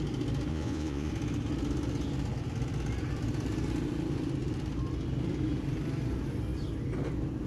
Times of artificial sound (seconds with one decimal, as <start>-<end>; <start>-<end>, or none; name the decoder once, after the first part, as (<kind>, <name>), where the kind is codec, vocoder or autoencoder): 0.5-1.1 (vocoder, Vocos)